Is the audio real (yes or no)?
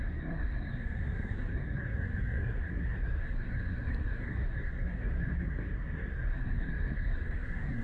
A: no